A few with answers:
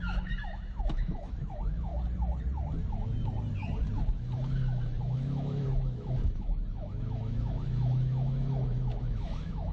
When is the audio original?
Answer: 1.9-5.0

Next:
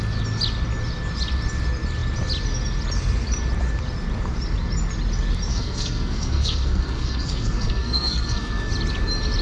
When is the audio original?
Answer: 0.0-5.5; 8.7-9.4

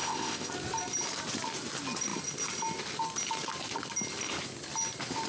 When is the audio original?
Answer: 0.5-5.3

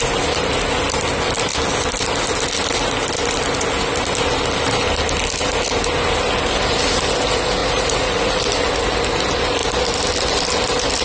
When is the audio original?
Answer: 0.0-7.6; 8.4-11.0

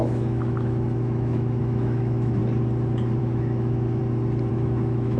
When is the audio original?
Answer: 2.4-3.2; 4.0-4.5

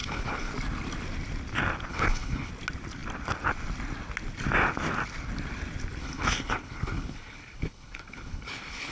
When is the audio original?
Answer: 0.5-1.9; 2.5-6.0

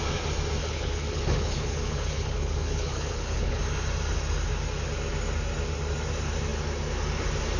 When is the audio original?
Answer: 0.0-0.6; 3.6-7.6

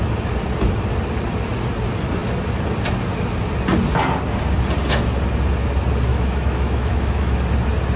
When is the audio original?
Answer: 0.0-6.1; 7.4-8.0